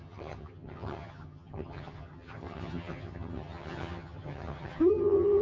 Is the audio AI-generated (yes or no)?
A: yes